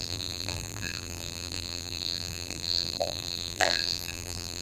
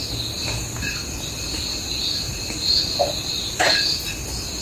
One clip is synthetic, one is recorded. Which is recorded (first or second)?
second